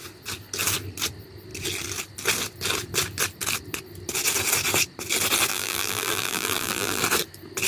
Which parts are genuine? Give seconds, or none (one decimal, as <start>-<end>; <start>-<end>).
0.0-5.5; 7.0-7.7